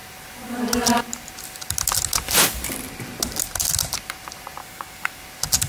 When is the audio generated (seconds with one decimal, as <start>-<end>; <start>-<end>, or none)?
4.6-5.2